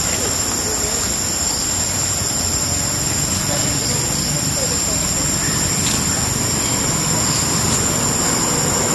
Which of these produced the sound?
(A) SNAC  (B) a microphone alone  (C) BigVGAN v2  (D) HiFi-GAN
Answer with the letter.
B